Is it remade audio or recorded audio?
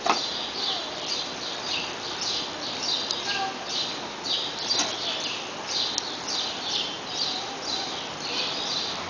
recorded